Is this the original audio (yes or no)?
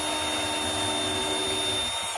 yes